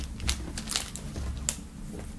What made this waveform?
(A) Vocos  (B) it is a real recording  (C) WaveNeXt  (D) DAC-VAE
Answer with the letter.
B